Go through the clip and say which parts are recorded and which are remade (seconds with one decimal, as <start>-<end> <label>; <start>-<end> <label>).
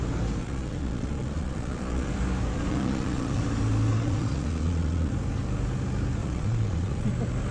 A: 0.0-0.4 recorded; 0.4-2.1 remade; 2.1-2.7 recorded; 2.7-3.4 remade; 3.4-3.9 recorded; 3.9-5.1 remade; 5.1-6.2 recorded; 6.2-7.1 remade; 7.1-7.5 recorded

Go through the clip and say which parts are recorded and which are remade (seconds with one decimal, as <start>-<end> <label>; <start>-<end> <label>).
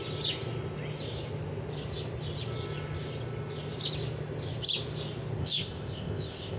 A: 0.0-5.4 recorded; 5.4-6.6 remade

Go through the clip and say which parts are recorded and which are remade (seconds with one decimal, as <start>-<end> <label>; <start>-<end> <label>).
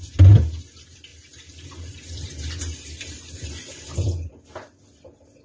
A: 0.0-1.1 recorded; 1.1-4.3 remade; 4.3-5.4 recorded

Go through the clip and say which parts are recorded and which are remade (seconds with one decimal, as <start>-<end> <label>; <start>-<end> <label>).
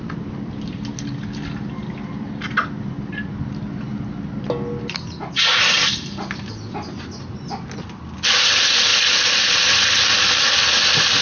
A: 0.0-11.2 recorded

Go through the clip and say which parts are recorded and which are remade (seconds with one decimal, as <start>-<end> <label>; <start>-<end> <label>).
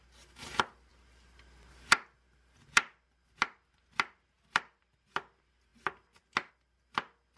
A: 0.0-7.4 recorded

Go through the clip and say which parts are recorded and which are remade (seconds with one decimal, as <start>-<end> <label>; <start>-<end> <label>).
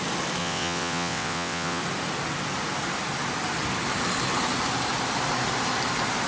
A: 0.0-0.4 recorded; 0.4-1.8 remade; 1.8-6.3 recorded